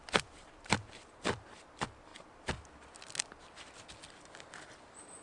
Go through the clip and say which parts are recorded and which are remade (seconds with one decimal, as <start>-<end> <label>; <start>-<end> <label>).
0.0-5.2 recorded